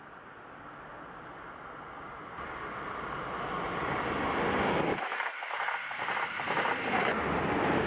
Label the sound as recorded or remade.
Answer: recorded